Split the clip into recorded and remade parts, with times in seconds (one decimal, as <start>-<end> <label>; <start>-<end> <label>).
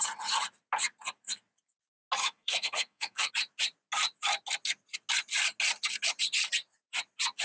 0.0-2.2 recorded; 2.2-3.3 remade; 3.3-7.4 recorded